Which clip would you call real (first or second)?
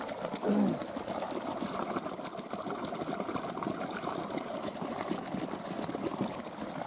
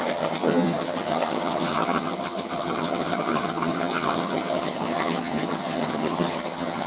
first